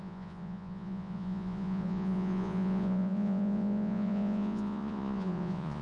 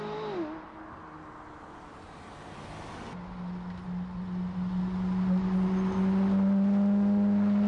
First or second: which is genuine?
second